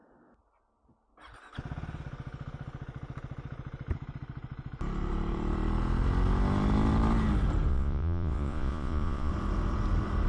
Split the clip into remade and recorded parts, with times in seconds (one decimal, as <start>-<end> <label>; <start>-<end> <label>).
0.0-7.7 recorded; 7.7-9.3 remade; 9.3-10.3 recorded